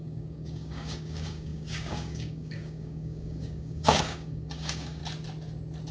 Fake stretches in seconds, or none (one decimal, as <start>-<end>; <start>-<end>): 0.0-5.0